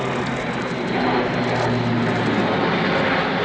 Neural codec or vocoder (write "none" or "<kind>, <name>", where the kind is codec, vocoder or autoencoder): none